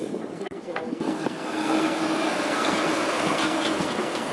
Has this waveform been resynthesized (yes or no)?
yes